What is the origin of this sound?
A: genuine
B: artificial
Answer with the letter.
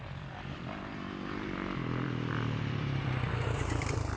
B